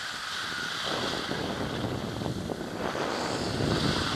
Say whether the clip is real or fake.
fake